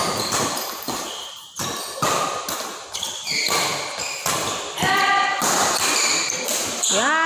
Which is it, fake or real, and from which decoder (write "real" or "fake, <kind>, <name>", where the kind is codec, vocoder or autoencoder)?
real